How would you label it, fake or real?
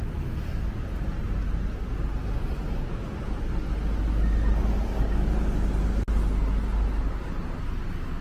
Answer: real